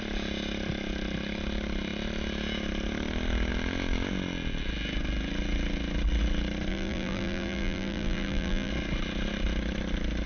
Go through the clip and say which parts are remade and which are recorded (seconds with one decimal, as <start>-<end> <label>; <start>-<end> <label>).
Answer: 0.0-6.7 recorded; 6.7-8.7 remade; 8.7-10.3 recorded